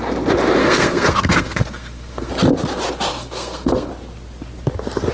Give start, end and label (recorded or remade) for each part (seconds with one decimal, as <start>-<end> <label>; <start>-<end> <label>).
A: 0.0-0.6 recorded; 0.6-2.3 remade; 2.3-3.1 recorded; 3.1-3.9 remade; 3.9-5.1 recorded